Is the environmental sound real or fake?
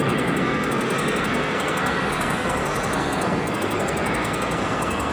fake